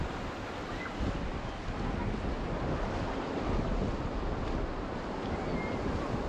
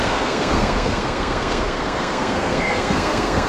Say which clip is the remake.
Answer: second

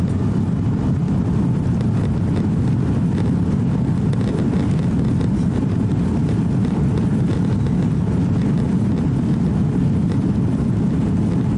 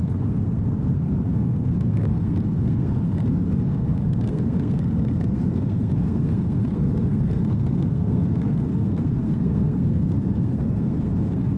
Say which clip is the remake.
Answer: second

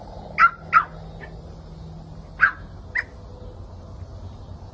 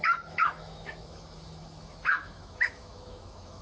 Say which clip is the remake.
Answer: second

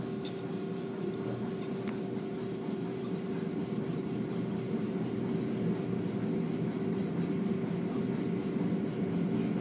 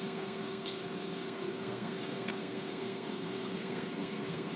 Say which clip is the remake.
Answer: second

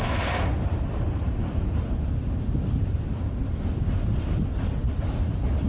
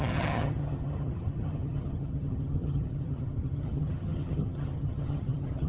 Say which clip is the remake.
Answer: second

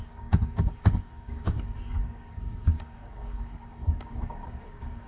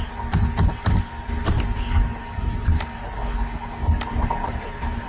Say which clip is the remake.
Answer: first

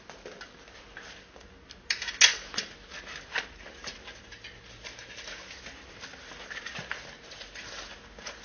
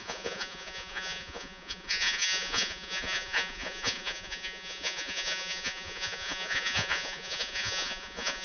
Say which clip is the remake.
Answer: second